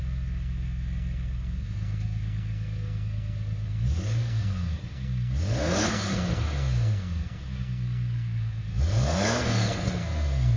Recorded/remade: remade